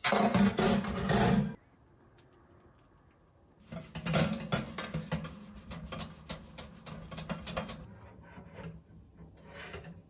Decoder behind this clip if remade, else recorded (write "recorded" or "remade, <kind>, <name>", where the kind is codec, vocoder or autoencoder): recorded